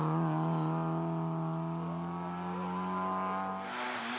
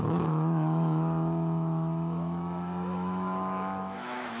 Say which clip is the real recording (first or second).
first